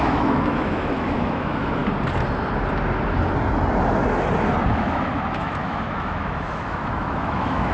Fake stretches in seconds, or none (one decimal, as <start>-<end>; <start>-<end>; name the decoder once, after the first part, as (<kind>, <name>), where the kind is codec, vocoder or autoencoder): 0.0-1.8 (autoencoder, DAC-VAE); 4.7-7.7